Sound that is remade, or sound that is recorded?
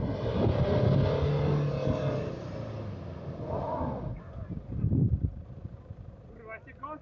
recorded